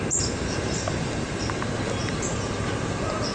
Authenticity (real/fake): fake